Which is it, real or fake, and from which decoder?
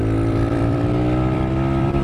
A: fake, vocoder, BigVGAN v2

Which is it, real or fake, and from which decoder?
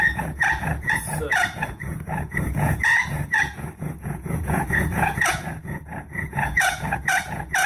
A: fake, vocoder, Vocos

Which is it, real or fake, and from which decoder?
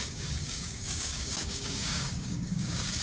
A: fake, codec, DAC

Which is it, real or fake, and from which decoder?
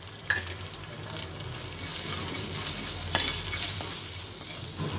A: real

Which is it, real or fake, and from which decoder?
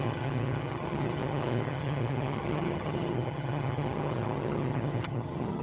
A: fake, vocoder, HiFi-GAN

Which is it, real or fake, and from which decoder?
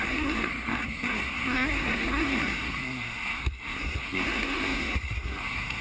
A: fake, codec, SNAC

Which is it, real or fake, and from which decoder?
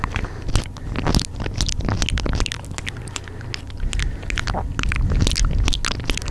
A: real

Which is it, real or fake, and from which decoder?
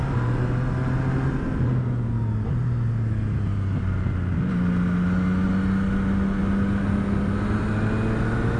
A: real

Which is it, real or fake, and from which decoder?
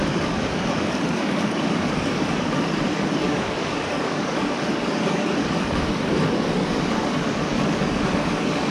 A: fake, codec, DAC